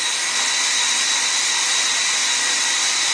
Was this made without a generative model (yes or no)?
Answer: yes